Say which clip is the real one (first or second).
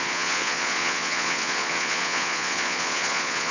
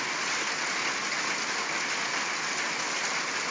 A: second